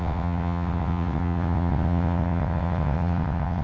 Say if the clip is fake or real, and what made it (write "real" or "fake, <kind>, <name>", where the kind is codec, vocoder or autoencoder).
fake, vocoder, WaveNeXt